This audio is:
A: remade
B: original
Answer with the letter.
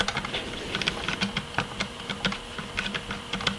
B